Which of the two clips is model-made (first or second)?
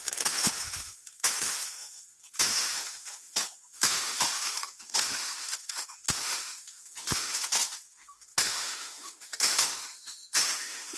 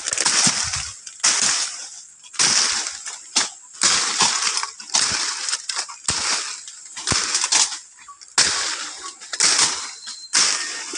first